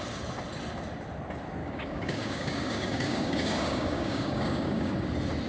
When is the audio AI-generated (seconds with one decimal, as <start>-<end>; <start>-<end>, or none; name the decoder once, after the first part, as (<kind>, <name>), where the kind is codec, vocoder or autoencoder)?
1.6-4.9 (codec, DAC)